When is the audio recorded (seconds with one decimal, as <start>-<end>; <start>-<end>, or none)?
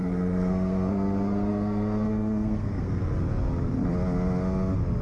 3.0-5.0